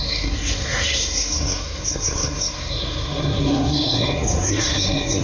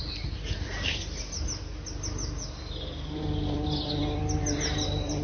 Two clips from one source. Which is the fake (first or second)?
first